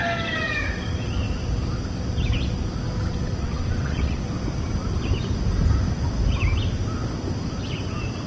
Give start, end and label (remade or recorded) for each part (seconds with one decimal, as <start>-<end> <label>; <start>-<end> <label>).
0.0-3.1 recorded; 3.1-4.2 remade; 4.2-8.3 recorded